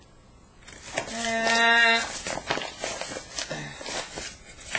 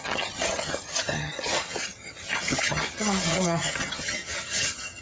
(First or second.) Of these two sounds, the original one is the first